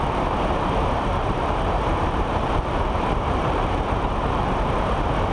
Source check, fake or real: fake